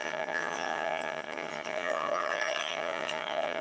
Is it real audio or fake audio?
fake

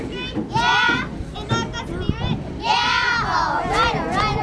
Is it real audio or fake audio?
real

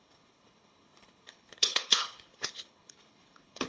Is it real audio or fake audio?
fake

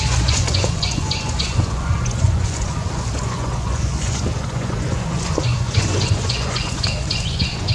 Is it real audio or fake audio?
fake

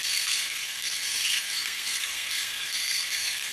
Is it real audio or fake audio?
fake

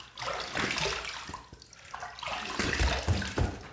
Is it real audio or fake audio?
real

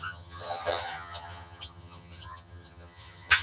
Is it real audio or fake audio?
fake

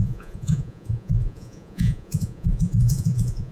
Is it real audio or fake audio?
fake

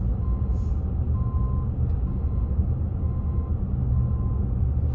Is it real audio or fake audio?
real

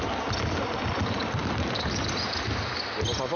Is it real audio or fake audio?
real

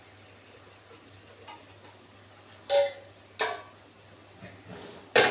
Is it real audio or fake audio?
real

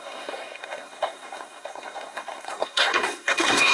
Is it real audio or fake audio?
fake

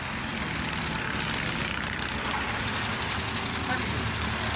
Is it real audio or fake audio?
real